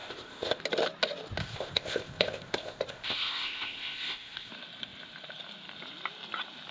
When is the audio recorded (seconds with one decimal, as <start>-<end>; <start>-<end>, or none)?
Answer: 0.6-1.4; 4.5-6.7